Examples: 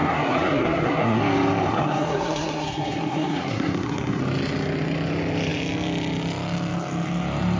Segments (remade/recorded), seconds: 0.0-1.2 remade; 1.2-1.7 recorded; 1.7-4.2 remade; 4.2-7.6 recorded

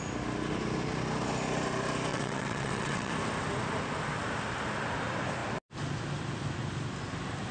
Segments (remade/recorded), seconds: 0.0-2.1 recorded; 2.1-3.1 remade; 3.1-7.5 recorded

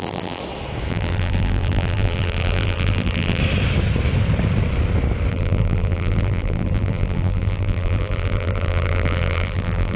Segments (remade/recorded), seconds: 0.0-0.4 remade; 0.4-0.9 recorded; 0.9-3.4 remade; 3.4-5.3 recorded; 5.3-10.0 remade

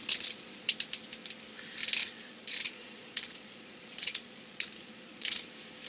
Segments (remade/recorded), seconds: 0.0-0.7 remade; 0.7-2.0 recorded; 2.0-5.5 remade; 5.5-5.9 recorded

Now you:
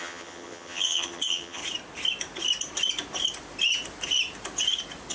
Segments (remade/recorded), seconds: 0.0-1.6 remade; 1.6-5.1 recorded

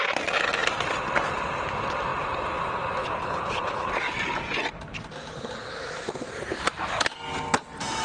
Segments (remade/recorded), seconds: 0.0-3.0 recorded; 3.0-3.9 remade; 3.9-8.0 recorded

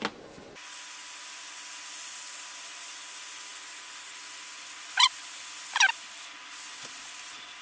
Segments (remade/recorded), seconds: 0.0-7.6 recorded

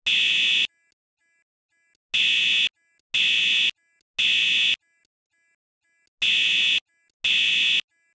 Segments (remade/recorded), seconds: 0.0-8.1 recorded